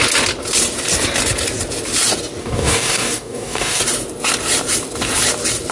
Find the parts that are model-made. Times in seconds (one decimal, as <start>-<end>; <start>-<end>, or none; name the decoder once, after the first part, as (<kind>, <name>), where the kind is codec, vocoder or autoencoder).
2.4-3.8 (codec, DAC)